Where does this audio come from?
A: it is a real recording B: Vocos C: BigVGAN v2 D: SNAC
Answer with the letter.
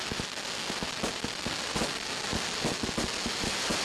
A